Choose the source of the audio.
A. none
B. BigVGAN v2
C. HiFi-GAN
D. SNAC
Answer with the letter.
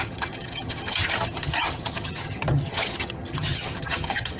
C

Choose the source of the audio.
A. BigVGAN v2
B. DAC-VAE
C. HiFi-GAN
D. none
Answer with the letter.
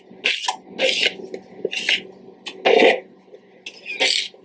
D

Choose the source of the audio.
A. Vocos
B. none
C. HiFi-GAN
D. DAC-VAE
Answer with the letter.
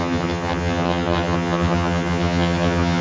C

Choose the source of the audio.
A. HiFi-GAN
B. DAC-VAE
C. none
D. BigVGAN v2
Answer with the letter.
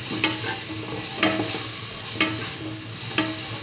C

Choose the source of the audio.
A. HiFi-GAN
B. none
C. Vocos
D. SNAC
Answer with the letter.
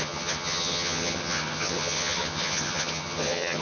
A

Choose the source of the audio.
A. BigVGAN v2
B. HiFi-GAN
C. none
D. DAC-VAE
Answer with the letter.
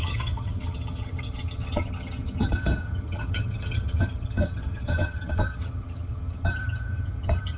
B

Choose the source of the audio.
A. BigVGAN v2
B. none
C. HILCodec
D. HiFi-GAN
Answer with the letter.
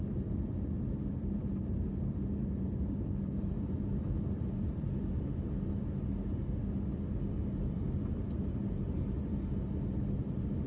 B